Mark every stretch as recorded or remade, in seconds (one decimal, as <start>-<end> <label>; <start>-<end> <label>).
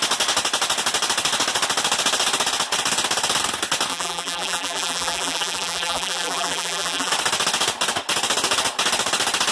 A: 0.0-3.9 recorded; 3.9-7.1 remade; 7.1-9.5 recorded